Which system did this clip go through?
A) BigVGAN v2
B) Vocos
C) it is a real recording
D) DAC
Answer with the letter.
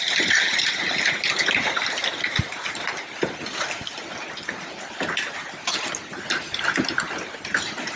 C